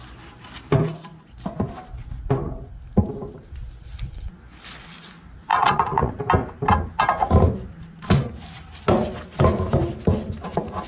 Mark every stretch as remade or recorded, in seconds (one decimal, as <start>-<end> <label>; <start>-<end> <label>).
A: 0.0-5.5 recorded; 5.5-6.1 remade; 6.1-10.9 recorded